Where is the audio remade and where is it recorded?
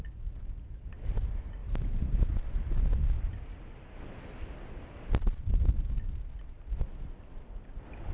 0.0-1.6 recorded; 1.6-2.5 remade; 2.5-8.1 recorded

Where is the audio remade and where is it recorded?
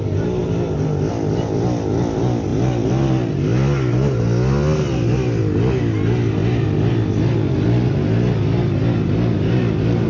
0.0-10.1 recorded